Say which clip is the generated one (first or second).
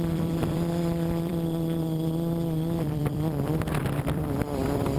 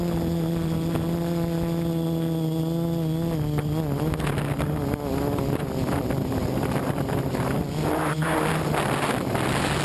first